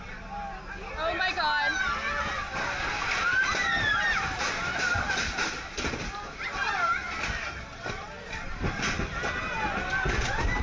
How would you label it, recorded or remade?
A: recorded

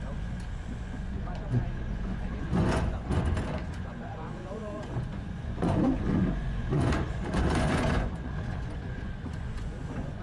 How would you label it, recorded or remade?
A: remade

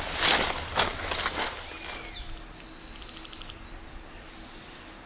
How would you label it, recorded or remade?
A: recorded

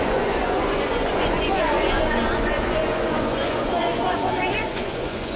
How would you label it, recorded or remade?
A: remade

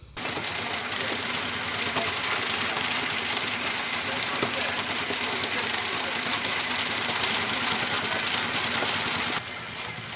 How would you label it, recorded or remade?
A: recorded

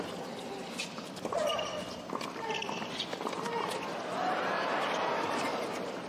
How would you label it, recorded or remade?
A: recorded